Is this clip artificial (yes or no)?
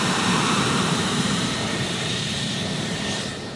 yes